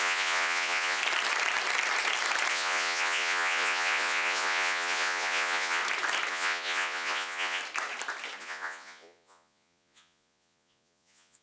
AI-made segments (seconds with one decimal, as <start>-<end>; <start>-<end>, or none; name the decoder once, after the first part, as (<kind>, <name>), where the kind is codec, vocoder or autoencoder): 0.0-1.0 (vocoder, Vocos); 2.5-5.8; 6.3-7.6; 8.4-11.4